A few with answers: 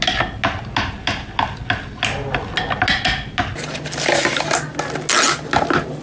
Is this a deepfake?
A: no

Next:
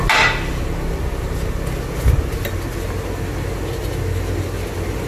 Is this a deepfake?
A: no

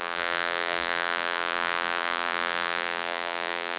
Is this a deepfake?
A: yes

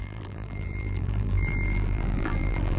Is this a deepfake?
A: yes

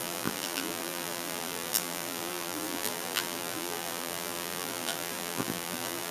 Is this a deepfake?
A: yes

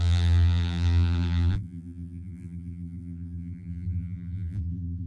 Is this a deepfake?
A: yes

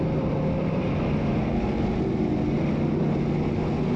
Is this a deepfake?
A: no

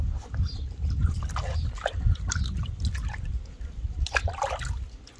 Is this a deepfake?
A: no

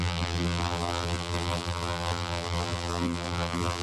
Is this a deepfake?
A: yes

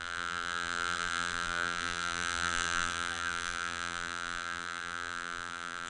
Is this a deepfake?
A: yes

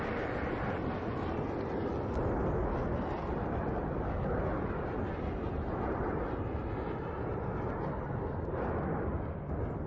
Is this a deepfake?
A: no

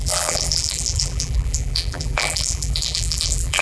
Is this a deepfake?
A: yes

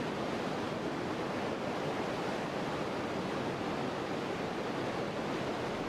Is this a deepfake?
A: no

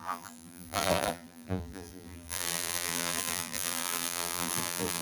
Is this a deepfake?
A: yes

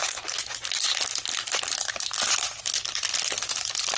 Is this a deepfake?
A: no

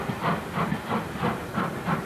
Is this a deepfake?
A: no